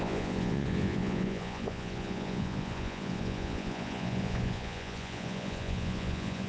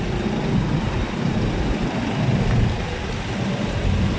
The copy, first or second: first